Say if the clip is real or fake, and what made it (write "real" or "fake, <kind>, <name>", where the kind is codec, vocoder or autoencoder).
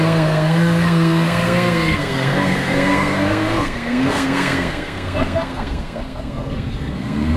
fake, codec, SNAC